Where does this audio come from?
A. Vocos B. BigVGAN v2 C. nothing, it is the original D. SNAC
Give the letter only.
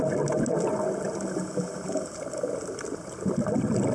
C